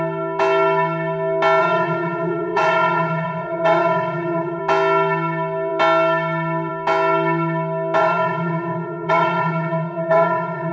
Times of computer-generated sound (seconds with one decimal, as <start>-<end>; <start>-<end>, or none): 1.6-4.6; 8.0-10.7